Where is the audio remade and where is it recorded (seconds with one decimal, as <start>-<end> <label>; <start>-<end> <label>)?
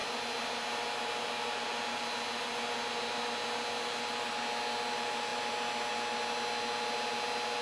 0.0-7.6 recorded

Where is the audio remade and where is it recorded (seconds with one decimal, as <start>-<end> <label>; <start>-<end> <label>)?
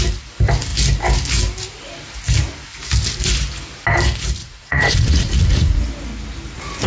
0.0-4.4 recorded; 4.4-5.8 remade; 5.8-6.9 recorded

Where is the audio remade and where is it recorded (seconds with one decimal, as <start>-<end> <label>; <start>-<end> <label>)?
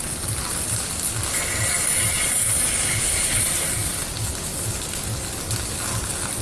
0.0-2.9 recorded; 2.9-3.4 remade; 3.4-6.4 recorded